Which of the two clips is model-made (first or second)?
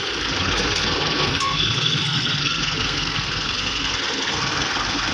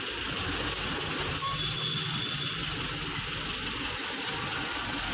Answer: first